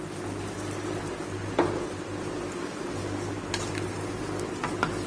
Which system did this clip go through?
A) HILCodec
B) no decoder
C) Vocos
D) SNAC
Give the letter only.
B